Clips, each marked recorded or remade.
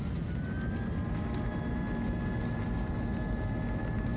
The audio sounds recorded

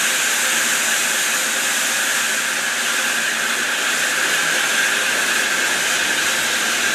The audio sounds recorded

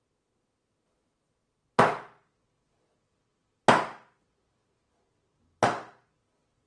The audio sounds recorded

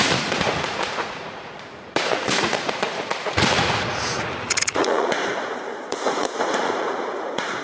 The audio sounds remade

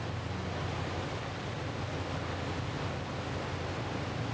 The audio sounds recorded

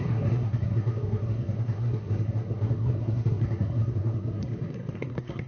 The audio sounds remade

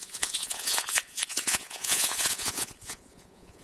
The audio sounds remade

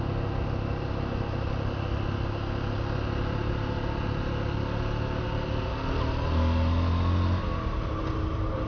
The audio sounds recorded